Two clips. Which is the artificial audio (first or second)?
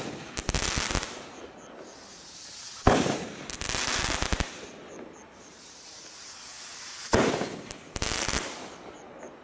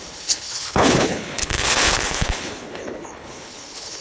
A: second